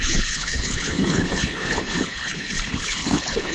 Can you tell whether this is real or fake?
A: fake